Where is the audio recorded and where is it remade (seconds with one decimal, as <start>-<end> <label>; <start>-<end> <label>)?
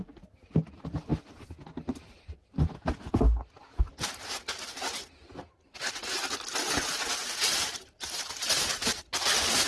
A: 0.0-7.5 recorded; 7.5-9.7 remade